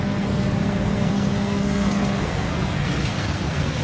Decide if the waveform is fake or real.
fake